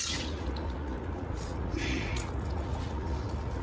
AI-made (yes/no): yes